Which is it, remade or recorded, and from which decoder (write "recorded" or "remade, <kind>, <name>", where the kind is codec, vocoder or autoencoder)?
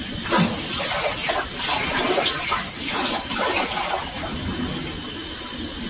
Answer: recorded